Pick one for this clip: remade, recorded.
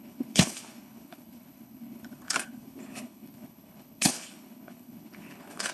remade